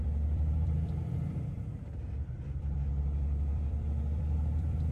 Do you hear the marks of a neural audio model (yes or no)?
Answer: yes